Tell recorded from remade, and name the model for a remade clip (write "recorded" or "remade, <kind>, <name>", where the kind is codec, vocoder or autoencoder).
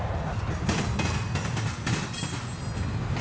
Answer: recorded